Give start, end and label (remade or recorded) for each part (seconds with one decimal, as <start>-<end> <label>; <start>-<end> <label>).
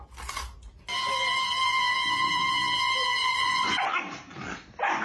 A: 0.0-3.2 recorded; 3.2-3.8 remade; 3.8-5.0 recorded